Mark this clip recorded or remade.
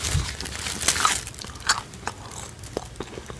recorded